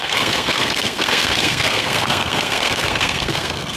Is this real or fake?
fake